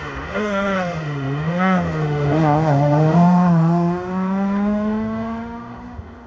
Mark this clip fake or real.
fake